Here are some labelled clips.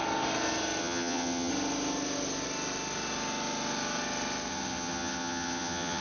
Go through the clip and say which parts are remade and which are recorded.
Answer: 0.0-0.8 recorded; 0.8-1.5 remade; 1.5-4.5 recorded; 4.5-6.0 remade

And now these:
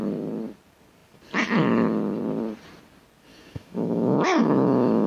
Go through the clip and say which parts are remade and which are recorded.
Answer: 0.0-3.3 recorded; 3.3-5.1 remade